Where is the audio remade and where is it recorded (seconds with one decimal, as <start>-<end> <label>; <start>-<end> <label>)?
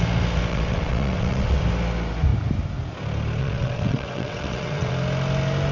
0.0-0.5 recorded; 0.5-1.6 remade; 1.6-3.4 recorded; 3.4-4.9 remade; 4.9-5.7 recorded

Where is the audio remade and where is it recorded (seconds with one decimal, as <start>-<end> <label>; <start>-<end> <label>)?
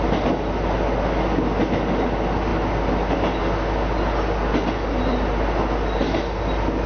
0.0-6.9 recorded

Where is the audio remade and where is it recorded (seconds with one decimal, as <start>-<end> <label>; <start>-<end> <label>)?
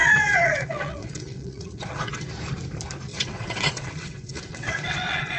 0.0-2.3 remade; 2.3-3.1 recorded; 3.1-5.4 remade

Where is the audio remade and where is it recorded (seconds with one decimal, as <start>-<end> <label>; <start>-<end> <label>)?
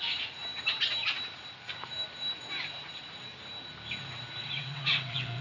0.0-4.4 recorded; 4.4-5.4 remade